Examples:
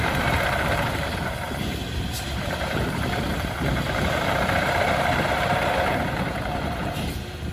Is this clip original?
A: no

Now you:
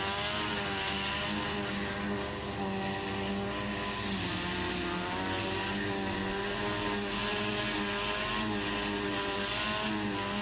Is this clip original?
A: yes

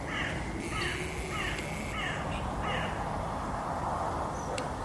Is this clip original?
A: yes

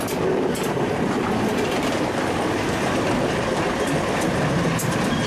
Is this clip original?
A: yes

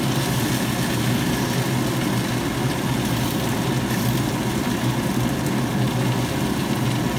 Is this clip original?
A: yes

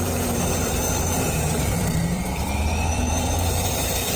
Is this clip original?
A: no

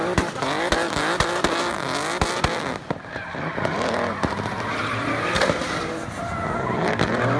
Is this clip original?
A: yes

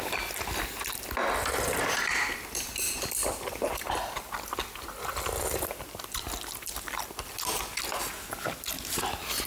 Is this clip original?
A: yes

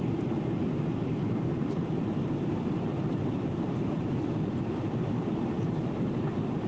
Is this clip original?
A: no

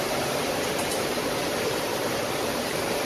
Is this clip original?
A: no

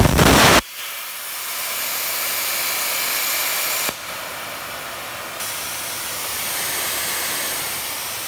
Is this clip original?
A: yes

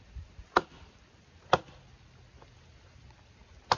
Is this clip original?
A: yes